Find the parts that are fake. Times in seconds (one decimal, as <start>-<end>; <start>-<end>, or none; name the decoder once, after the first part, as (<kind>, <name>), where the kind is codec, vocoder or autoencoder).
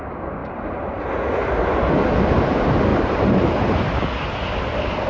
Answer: 0.4-1.0 (vocoder, BigVGAN v2); 2.9-3.5